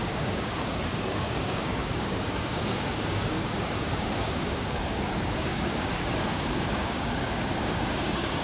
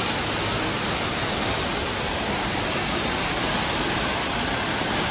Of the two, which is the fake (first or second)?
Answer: first